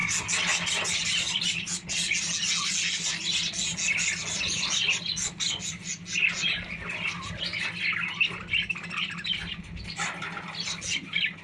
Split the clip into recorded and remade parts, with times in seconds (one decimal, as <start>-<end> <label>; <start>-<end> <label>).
0.0-11.4 recorded